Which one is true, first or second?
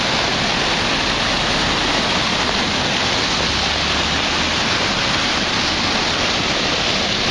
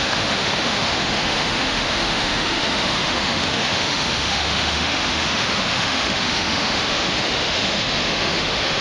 first